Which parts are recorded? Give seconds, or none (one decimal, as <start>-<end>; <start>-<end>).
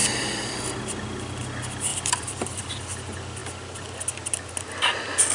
0.6-1.9; 2.8-5.3